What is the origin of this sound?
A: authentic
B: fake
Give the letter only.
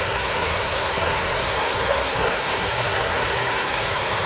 B